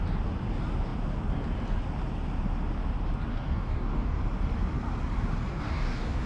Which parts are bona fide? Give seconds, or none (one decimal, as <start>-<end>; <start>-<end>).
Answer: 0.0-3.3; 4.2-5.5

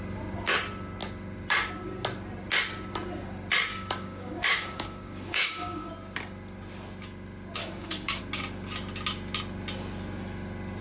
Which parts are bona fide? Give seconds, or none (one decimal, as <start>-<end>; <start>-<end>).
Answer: 0.0-3.7; 5.9-7.6; 8.2-10.8

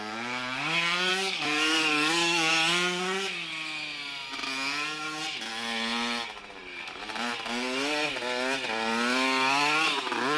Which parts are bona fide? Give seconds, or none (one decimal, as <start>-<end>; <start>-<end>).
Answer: 0.0-1.1; 2.5-10.4

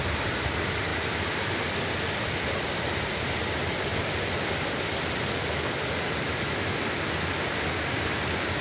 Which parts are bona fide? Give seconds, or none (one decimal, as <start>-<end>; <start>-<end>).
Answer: 0.0-8.6